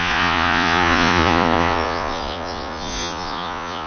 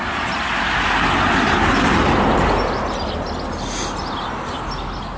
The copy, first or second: first